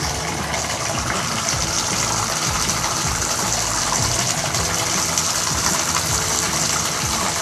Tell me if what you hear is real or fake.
real